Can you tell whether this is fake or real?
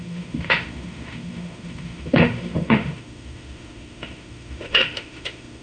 fake